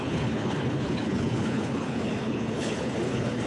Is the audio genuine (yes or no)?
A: no